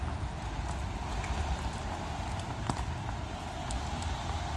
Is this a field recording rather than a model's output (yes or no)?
no